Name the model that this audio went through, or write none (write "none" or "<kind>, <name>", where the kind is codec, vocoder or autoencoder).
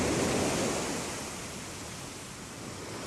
none